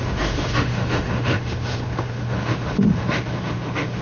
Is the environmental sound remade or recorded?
remade